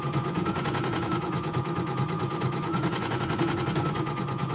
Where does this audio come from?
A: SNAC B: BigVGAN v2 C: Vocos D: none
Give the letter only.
C